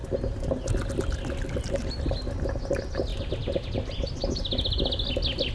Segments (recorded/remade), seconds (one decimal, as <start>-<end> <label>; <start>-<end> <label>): 0.0-5.5 recorded